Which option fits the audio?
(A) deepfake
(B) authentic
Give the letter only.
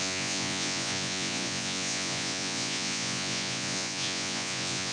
A